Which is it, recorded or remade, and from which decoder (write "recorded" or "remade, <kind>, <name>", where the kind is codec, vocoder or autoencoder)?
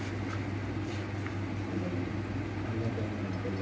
recorded